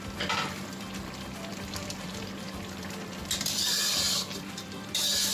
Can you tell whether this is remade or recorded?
remade